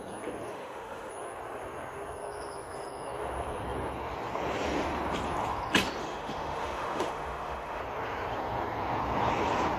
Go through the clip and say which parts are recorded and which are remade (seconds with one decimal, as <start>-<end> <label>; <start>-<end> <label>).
0.0-0.5 recorded; 0.5-1.1 remade; 1.1-6.0 recorded; 6.0-7.8 remade; 7.8-9.8 recorded